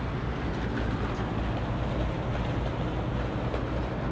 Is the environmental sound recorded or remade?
recorded